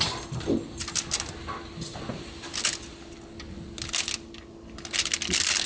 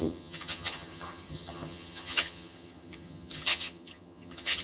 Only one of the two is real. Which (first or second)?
first